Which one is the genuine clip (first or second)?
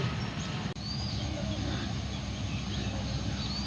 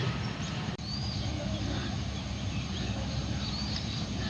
first